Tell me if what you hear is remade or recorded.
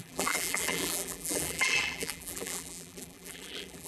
remade